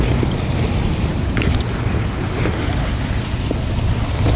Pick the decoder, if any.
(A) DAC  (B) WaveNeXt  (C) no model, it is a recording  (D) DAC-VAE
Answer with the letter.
C